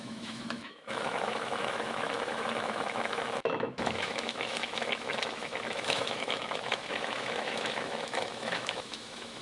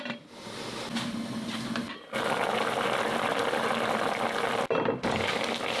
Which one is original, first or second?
second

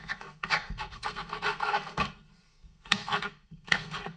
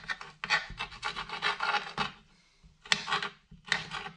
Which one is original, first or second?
second